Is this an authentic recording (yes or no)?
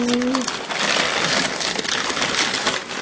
yes